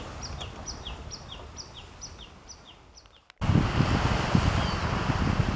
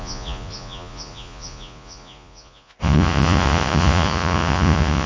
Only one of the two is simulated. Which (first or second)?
second